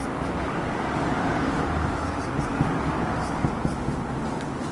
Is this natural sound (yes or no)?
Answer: no